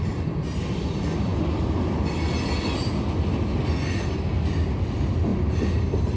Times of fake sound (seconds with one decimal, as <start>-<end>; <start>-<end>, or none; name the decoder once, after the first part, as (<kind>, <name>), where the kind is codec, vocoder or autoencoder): none